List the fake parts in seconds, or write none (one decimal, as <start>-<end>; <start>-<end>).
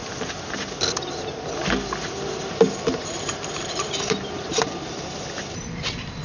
2.5-6.2